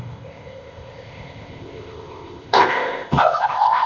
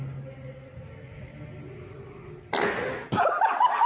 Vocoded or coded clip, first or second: first